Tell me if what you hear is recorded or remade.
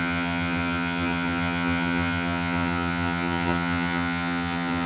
remade